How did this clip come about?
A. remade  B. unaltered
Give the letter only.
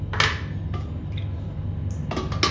B